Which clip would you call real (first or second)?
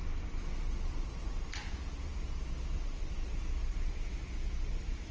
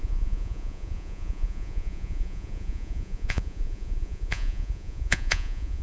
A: first